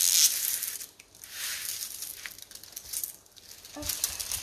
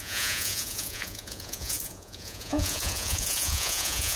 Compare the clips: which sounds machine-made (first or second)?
second